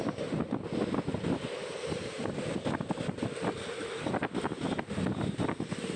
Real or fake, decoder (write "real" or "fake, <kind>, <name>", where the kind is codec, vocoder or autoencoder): real